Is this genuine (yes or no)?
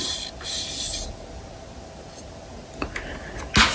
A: yes